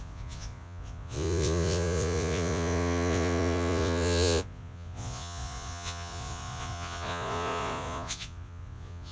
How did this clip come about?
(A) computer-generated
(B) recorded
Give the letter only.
A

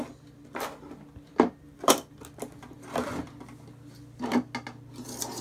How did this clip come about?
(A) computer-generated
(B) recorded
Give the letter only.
B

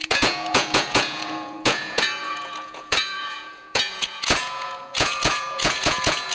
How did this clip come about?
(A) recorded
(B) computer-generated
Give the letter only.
B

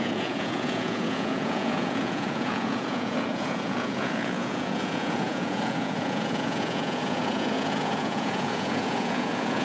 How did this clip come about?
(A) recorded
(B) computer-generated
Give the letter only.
B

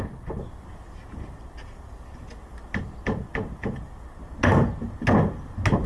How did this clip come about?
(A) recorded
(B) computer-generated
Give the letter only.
A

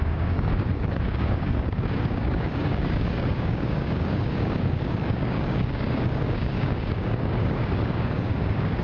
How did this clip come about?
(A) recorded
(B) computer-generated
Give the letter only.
B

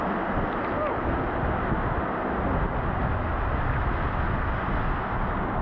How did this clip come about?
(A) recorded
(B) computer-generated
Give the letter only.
A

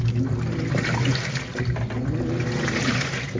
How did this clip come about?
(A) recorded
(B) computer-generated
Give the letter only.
A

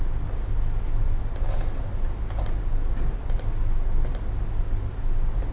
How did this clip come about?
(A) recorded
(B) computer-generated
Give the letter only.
A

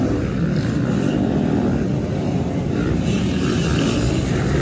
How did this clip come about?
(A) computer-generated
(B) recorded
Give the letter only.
B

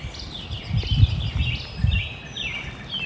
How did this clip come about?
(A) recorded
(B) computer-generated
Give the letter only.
A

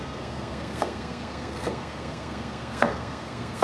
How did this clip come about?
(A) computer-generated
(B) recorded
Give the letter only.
A